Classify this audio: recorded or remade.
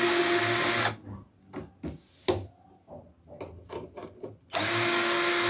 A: recorded